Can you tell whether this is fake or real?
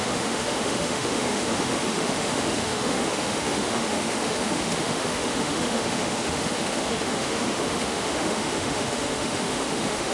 fake